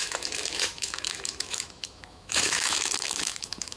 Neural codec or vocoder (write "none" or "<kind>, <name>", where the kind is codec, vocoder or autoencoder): autoencoder, DAC-VAE